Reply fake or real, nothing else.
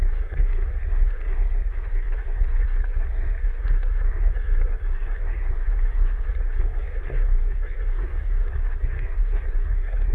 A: fake